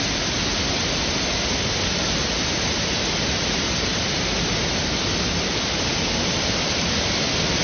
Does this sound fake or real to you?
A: real